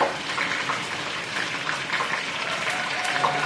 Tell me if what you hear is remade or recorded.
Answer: recorded